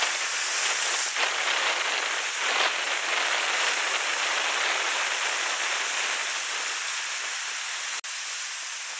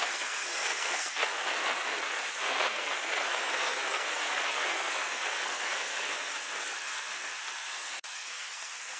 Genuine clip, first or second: first